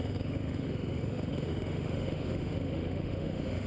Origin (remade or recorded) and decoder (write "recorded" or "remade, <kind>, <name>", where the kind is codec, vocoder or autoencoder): remade, autoencoder, DAC-VAE